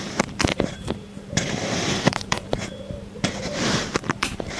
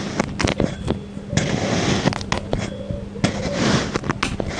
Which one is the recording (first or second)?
second